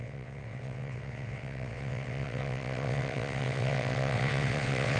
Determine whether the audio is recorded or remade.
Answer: remade